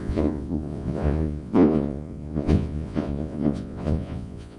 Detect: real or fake fake